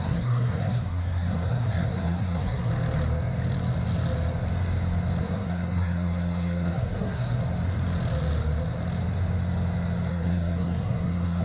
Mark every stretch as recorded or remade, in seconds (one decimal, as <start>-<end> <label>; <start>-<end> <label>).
0.0-2.7 remade; 2.7-5.2 recorded; 5.2-7.4 remade; 7.4-10.1 recorded; 10.1-11.4 remade